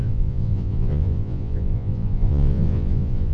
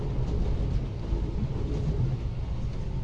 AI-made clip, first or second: first